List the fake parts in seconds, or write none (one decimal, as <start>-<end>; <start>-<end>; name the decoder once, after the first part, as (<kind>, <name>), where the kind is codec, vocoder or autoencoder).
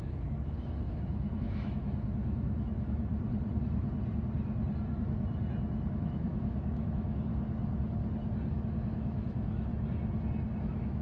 0.0-3.1 (autoencoder, DAC-VAE); 5.9-7.3; 8.5-9.7; 10.6-11.0